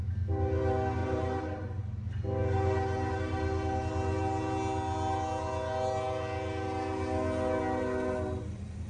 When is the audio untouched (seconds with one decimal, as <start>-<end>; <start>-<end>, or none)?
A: 0.0-1.0; 1.8-8.9

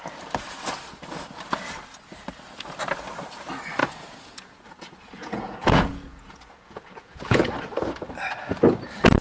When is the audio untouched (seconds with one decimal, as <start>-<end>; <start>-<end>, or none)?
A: 0.0-3.8; 7.5-9.2